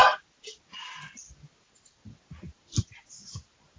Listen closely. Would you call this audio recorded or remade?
recorded